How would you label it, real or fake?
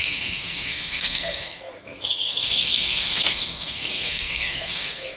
fake